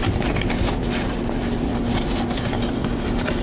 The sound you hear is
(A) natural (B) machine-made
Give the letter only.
A